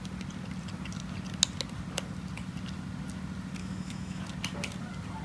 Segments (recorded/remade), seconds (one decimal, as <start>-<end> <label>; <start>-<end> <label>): 0.0-3.6 recorded; 3.6-4.2 remade; 4.2-5.2 recorded

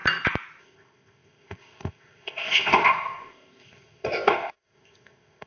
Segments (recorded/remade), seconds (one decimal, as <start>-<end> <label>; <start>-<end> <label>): 0.0-0.6 recorded; 0.6-5.5 remade

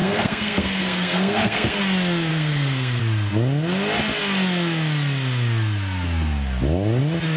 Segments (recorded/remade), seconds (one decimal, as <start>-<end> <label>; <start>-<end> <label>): 0.0-1.8 remade; 1.8-2.3 recorded; 2.3-3.0 remade; 3.0-7.4 recorded

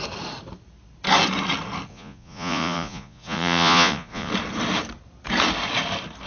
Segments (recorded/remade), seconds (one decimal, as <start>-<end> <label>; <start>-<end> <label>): 0.0-1.9 recorded; 1.9-4.3 remade; 4.3-6.3 recorded

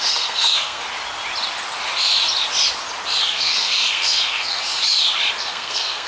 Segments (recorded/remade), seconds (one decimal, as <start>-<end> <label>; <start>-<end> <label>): 0.0-0.8 remade; 0.8-3.2 recorded; 3.2-4.6 remade; 4.6-5.4 recorded; 5.4-6.1 remade

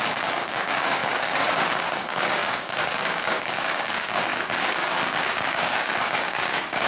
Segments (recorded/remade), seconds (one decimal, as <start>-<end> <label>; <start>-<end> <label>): 0.0-6.9 remade